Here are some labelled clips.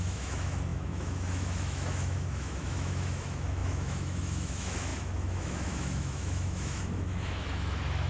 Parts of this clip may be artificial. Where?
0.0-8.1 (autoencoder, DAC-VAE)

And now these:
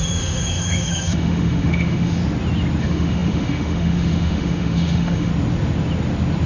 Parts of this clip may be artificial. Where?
0.0-2.2 (autoencoder, DAC-VAE); 2.8-5.3

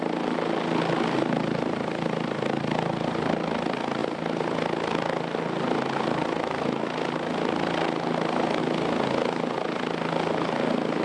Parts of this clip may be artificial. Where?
none

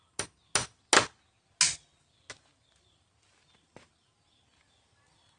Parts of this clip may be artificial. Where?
none

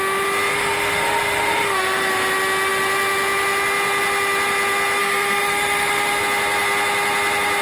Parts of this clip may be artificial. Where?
0.5-2.1 (autoencoder, DAC-VAE); 5.0-6.2

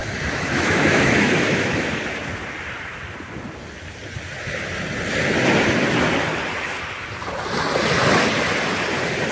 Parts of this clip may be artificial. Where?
0.0-1.9 (autoencoder, DAC-VAE)

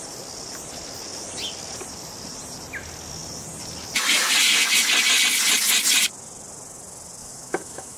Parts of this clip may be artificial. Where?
7.2-8.0 (autoencoder, DAC-VAE)

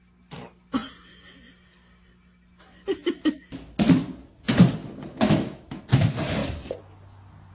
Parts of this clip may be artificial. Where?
4.8-5.8 (autoencoder, DAC-VAE)